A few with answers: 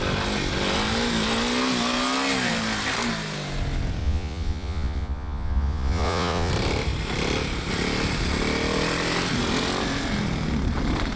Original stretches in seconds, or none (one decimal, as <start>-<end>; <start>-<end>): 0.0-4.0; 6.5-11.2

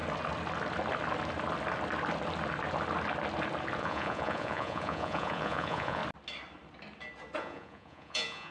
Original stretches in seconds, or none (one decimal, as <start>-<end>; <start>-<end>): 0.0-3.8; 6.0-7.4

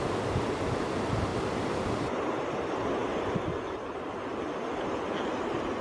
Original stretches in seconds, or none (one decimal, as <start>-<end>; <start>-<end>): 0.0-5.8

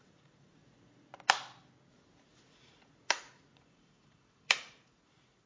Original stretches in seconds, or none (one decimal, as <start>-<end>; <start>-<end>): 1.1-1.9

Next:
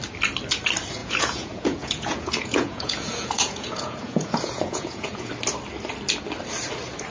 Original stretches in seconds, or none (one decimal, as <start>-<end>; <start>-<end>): 0.0-1.0; 5.3-7.1

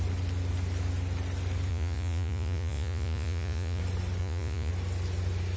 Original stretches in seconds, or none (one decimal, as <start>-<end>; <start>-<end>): 0.0-1.7; 3.8-4.2; 4.7-5.6